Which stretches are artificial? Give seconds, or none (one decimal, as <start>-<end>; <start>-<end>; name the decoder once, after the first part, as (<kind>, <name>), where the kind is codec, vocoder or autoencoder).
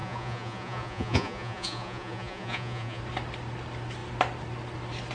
0.0-3.0 (vocoder, Vocos)